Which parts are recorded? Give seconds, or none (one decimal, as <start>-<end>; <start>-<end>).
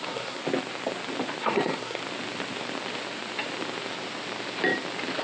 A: 0.4-1.4; 2.0-5.2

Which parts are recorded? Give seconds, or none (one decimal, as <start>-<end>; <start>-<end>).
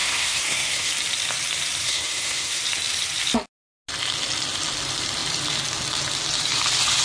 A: 0.9-1.8; 2.6-7.0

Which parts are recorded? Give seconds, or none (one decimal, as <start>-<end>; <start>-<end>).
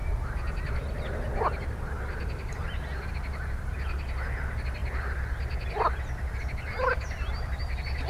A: 0.0-8.1